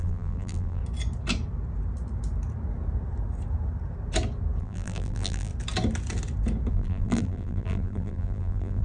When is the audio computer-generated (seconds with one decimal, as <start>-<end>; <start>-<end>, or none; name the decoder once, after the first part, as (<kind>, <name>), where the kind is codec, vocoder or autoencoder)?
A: 0.0-0.8 (vocoder, BigVGAN v2); 4.6-5.5; 6.7-8.8